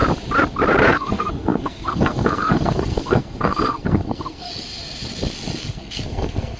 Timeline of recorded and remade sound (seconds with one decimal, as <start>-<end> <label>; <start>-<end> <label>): 0.0-0.9 recorded; 0.9-4.5 remade; 4.5-5.6 recorded; 5.6-6.6 remade